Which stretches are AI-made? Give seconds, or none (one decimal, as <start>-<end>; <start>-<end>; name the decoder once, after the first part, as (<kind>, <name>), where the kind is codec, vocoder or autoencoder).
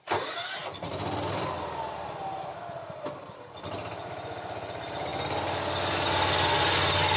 none